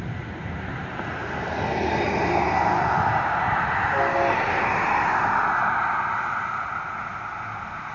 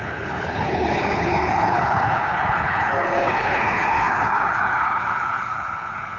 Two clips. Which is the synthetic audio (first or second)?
second